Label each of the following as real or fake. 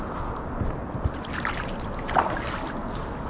real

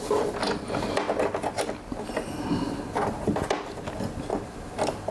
real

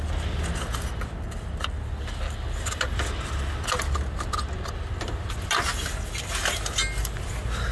real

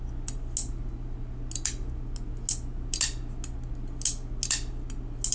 real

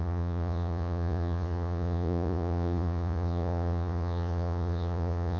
fake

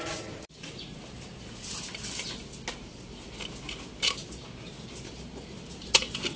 real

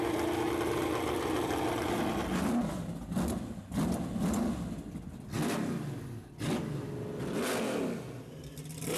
real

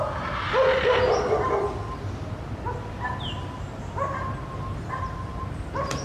real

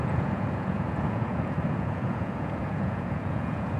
fake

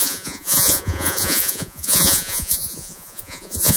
fake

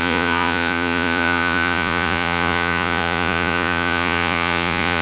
fake